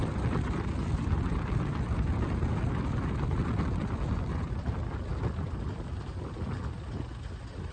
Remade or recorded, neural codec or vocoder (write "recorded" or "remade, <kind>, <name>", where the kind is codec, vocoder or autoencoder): recorded